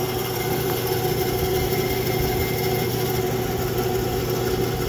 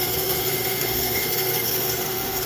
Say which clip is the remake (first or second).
second